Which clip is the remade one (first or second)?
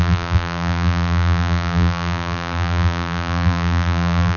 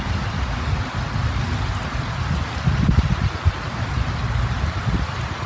first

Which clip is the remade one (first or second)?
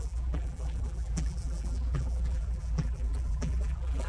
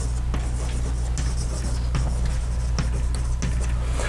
first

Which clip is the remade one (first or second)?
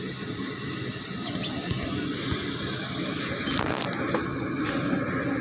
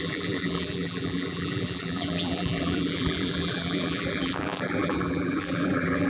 second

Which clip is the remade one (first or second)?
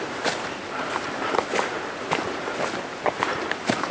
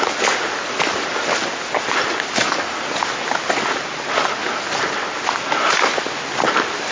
first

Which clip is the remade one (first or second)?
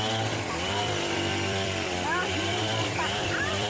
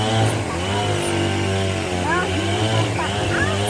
first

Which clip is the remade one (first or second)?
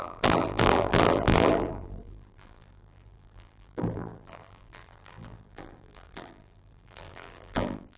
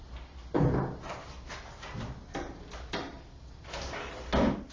first